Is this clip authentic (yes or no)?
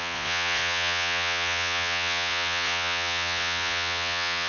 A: no